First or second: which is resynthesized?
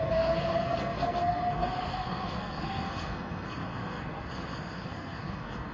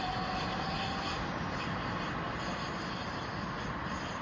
first